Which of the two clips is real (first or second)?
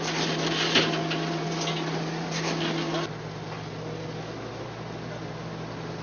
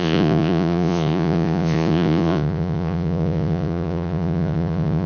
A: first